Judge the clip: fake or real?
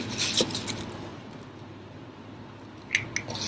real